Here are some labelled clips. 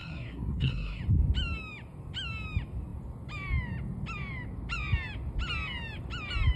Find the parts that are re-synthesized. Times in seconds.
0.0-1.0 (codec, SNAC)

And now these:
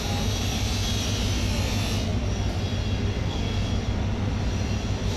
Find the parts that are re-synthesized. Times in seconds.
3.2-3.7 (codec, SNAC)

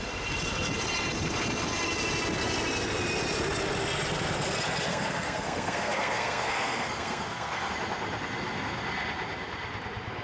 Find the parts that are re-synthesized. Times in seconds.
4.9-7.7 (codec, SNAC)

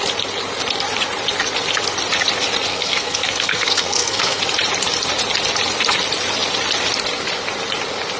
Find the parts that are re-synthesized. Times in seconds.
2.7-4.4 (codec, SNAC)

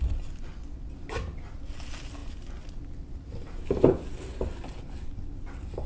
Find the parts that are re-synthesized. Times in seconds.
none

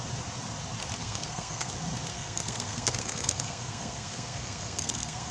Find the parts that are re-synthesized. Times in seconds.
1.0-1.7 (codec, SNAC); 2.1-5.3

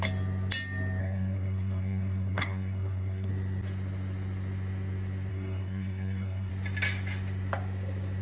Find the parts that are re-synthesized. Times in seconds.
1.0-3.3 (codec, SNAC); 5.3-6.5

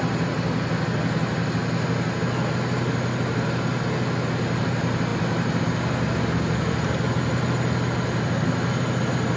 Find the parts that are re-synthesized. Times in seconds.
none